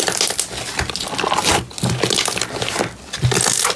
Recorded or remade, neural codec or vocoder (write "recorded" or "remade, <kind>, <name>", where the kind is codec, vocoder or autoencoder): recorded